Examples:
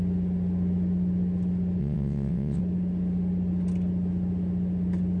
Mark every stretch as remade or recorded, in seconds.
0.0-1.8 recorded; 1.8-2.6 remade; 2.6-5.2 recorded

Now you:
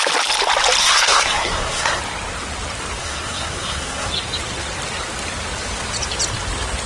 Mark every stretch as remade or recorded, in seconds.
0.0-0.8 recorded; 0.8-2.0 remade; 2.0-3.0 recorded; 3.0-4.1 remade; 4.1-6.9 recorded

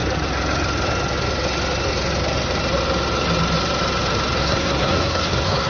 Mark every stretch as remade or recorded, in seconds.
0.0-4.4 recorded; 4.4-5.7 remade

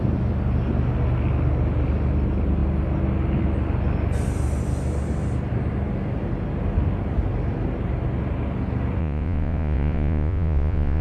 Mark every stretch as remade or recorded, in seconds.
0.0-9.0 recorded; 9.0-11.0 remade

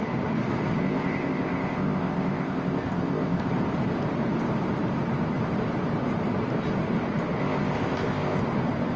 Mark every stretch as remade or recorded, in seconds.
0.0-0.8 recorded; 0.8-3.5 remade; 3.5-7.4 recorded; 7.4-8.4 remade; 8.4-9.0 recorded